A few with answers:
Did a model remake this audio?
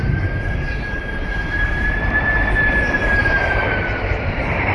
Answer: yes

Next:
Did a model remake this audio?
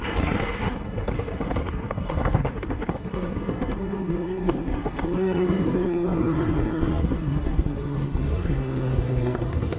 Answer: yes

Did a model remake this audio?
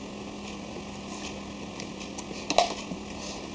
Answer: no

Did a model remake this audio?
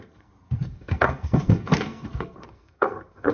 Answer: yes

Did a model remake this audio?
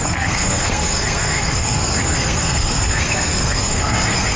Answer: yes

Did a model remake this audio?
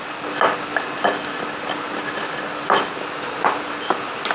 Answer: no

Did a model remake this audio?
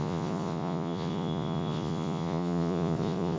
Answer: yes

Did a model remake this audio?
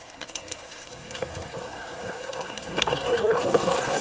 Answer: yes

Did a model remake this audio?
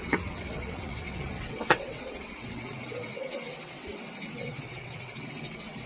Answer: yes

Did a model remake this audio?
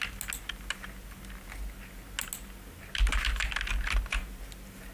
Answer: no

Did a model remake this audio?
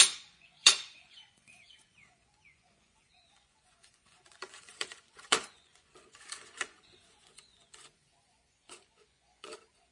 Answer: yes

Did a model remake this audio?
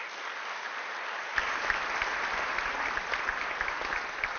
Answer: no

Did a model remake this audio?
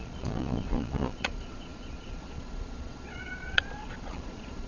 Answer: yes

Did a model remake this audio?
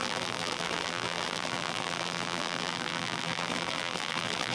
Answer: yes